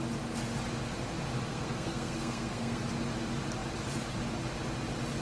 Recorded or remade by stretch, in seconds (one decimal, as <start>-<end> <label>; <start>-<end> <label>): 0.0-1.5 recorded; 1.5-2.8 remade; 2.8-5.2 recorded